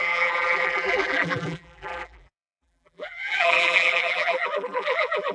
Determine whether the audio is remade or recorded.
remade